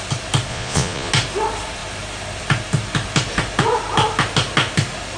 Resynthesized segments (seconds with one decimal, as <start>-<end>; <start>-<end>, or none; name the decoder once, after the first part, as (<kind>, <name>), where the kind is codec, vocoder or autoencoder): 0.5-1.1 (vocoder, Vocos)